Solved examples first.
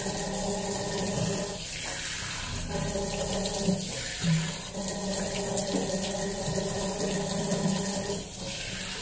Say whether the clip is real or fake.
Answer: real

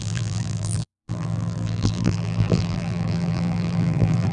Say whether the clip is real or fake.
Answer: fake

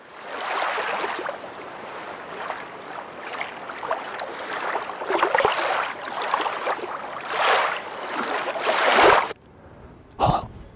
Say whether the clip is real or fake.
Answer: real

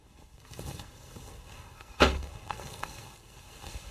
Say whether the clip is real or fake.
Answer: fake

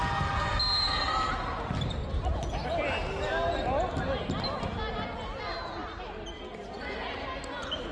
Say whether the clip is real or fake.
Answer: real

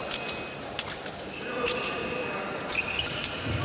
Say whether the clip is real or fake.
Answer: real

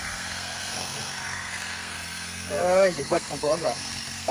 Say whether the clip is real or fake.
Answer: fake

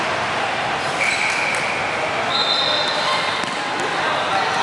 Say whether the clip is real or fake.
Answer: real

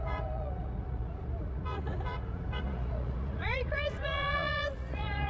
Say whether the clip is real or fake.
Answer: fake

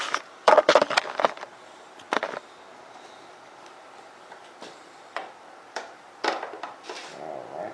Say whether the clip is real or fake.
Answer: fake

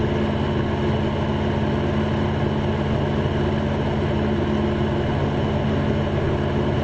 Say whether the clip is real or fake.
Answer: real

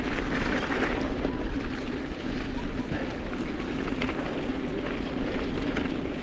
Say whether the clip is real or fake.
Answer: real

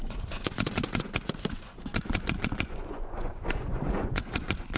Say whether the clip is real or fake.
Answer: fake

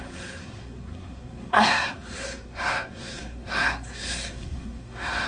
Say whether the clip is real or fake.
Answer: fake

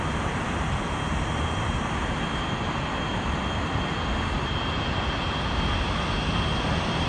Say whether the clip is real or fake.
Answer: real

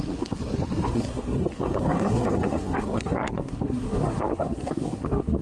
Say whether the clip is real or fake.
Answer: fake